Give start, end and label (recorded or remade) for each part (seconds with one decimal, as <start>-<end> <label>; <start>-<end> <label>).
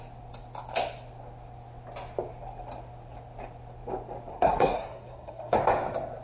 0.0-4.3 recorded; 4.3-5.6 remade; 5.6-6.2 recorded